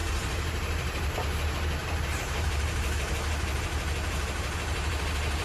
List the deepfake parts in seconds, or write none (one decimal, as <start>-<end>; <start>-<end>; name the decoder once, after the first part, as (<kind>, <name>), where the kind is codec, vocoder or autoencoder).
0.0-1.1 (vocoder, BigVGAN v2); 1.8-5.0